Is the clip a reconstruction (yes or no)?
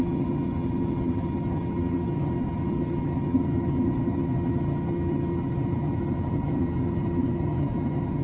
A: yes